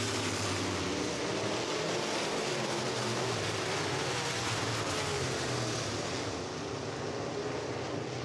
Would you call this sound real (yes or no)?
yes